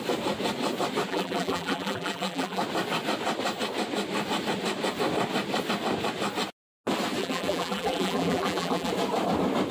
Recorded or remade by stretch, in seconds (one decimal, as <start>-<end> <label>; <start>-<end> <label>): 0.0-1.1 recorded; 1.1-2.6 remade; 2.6-7.2 recorded; 7.2-8.9 remade; 8.9-9.7 recorded